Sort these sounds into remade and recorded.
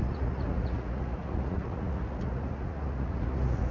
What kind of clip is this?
remade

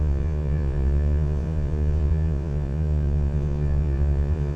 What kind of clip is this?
remade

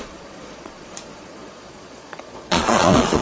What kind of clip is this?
remade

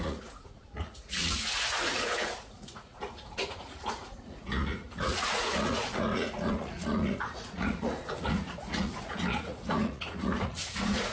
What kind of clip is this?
remade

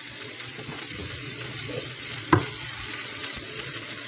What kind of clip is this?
remade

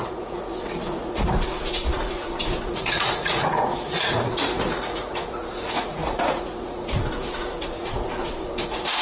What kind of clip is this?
remade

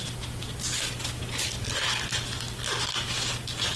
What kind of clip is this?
recorded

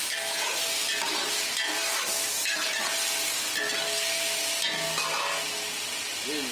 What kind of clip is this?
recorded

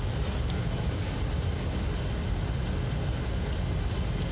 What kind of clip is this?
recorded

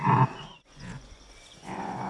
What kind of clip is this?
remade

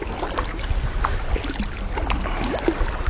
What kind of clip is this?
recorded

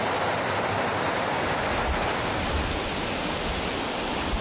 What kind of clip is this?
recorded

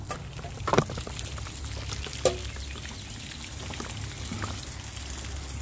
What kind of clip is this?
recorded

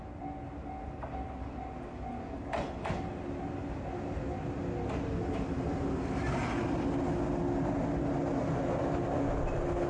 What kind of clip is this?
recorded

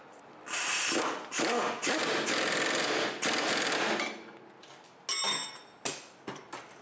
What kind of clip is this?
recorded